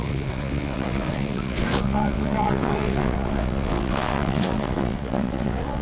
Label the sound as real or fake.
fake